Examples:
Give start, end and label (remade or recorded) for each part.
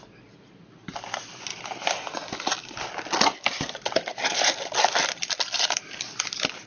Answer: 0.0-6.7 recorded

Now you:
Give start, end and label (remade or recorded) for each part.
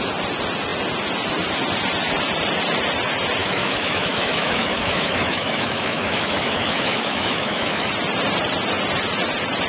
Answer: 0.0-3.4 recorded; 3.4-7.9 remade; 7.9-9.7 recorded